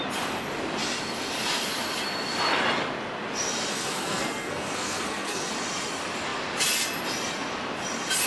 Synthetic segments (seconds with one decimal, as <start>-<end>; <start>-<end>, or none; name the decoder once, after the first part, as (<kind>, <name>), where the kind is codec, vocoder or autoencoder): 3.7-5.5 (codec, SNAC)

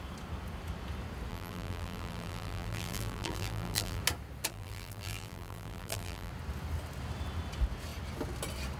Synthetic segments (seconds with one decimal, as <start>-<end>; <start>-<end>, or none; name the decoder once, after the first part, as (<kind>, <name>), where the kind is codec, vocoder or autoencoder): 1.3-4.0 (vocoder, BigVGAN v2); 4.5-6.3